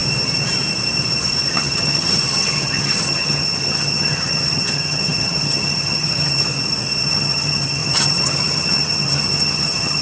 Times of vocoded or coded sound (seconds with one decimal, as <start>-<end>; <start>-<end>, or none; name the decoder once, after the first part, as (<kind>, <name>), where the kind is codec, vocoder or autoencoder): 1.5-6.5 (vocoder, HiFi-GAN); 7.1-10.0